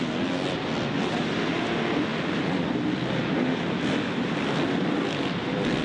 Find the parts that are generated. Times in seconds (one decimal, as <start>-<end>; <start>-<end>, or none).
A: none